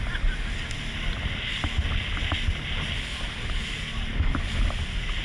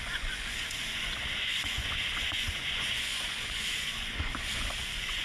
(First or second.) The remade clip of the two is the second